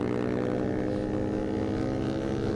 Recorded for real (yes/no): yes